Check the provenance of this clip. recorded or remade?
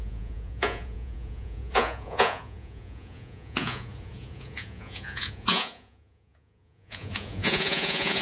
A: remade